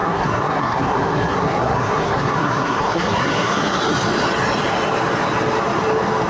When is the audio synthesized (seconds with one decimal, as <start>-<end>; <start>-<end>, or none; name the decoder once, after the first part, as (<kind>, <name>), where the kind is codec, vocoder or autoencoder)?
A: 0.0-3.8 (codec, SNAC)